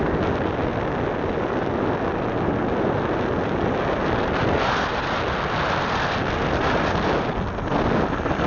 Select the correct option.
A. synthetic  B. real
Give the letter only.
B